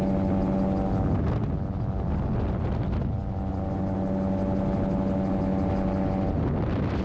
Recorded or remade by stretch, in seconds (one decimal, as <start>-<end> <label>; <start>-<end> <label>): 0.0-7.0 recorded